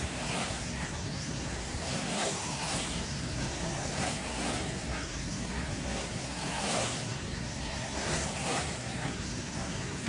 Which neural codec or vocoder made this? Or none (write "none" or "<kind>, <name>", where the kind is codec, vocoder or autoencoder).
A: codec, SNAC